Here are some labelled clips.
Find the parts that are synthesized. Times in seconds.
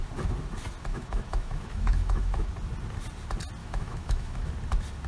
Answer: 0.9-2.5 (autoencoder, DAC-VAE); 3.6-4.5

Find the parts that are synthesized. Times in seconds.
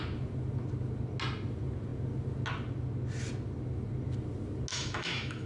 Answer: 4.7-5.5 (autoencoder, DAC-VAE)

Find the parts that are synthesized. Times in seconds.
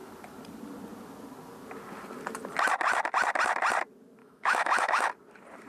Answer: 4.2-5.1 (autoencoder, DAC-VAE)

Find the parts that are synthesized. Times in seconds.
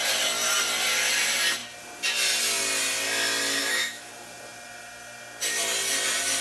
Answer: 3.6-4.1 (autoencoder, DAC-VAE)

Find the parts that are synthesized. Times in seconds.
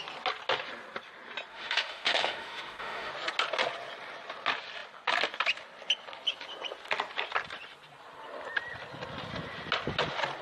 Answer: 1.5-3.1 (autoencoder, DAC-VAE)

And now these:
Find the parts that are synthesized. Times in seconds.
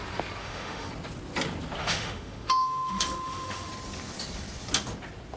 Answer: 0.4-0.9 (autoencoder, DAC-VAE); 1.8-3.7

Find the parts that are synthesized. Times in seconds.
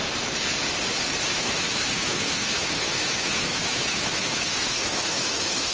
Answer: 1.3-5.7 (autoencoder, DAC-VAE)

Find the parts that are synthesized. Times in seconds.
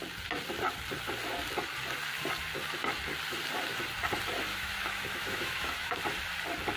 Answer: 4.5-6.0 (autoencoder, DAC-VAE)